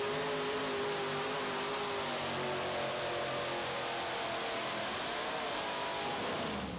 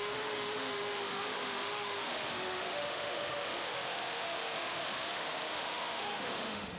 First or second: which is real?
first